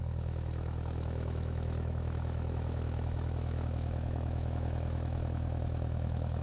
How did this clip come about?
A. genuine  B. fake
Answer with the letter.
B